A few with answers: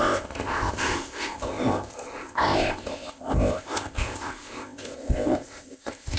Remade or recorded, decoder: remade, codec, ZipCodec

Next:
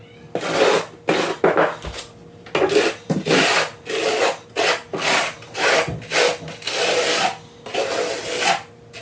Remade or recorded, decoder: recorded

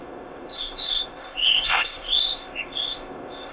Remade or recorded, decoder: remade, codec, ZipCodec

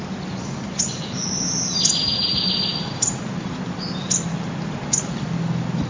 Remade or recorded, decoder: recorded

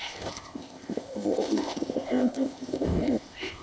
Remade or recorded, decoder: remade, codec, ZipCodec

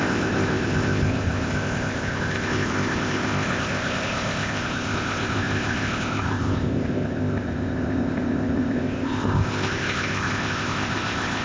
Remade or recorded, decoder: remade, codec, ZipCodec